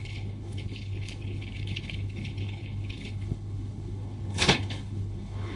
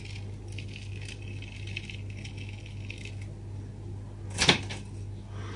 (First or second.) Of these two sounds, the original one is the second